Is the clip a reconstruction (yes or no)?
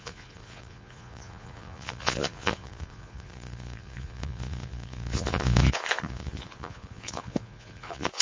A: yes